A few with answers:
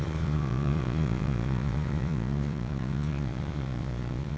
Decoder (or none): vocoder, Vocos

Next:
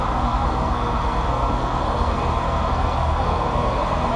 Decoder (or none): codec, SNAC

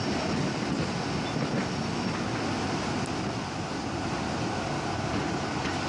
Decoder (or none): none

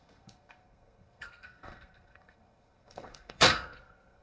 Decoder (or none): codec, SNAC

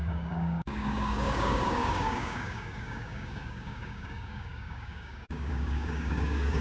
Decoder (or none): codec, DAC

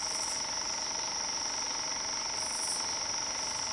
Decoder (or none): none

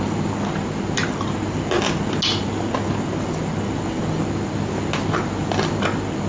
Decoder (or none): none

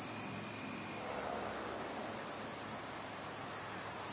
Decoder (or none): vocoder, BigVGAN v2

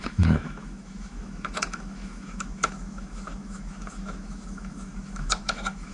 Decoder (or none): autoencoder, DAC-VAE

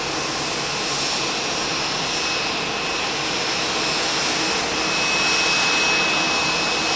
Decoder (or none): none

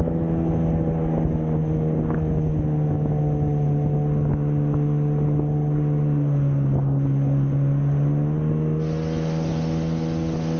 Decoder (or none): none